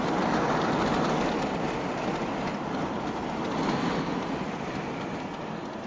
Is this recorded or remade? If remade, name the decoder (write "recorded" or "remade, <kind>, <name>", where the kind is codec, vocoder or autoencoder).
remade, vocoder, BigVGAN v2